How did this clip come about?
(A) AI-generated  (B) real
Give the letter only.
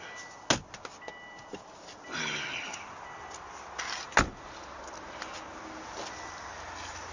B